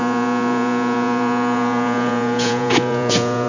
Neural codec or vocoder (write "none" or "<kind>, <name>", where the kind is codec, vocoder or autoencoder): vocoder, Vocos